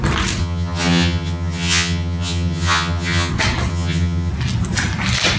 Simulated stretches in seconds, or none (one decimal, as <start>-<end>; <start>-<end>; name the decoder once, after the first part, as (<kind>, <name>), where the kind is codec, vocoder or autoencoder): 0.4-3.3 (vocoder, HiFi-GAN); 3.7-4.3